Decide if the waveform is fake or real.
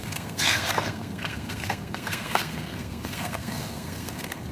fake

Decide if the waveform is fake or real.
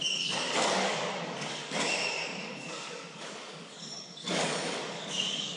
fake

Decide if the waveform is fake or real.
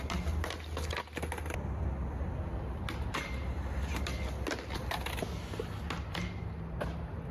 real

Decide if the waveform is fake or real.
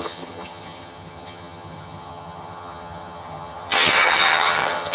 fake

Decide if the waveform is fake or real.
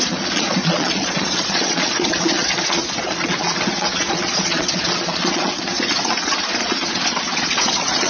fake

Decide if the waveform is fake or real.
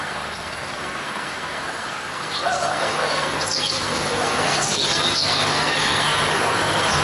fake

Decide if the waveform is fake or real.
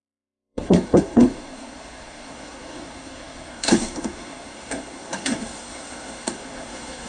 fake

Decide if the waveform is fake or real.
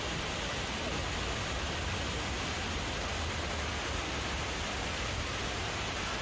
real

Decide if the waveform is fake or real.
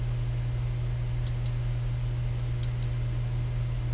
real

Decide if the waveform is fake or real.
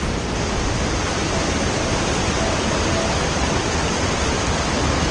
real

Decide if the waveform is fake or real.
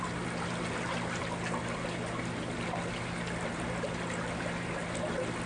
real